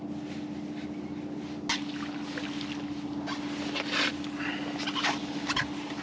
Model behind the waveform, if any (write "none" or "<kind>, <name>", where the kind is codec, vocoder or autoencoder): none